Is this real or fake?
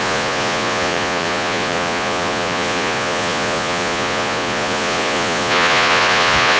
fake